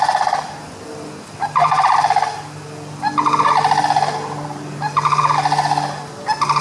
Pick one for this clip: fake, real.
fake